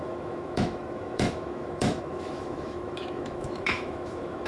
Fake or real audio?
fake